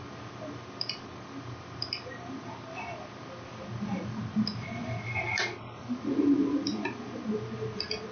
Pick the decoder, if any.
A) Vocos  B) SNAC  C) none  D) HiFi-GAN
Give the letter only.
C